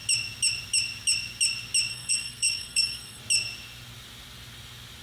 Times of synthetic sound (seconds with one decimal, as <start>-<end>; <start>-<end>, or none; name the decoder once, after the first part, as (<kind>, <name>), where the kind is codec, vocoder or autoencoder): 1.9-3.2 (codec, SNAC)